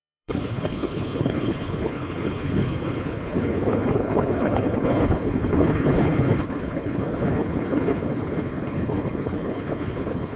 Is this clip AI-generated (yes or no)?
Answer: yes